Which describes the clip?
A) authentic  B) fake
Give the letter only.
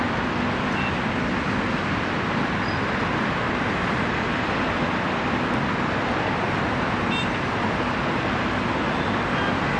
A